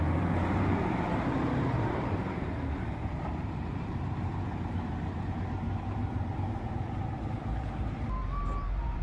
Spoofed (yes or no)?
yes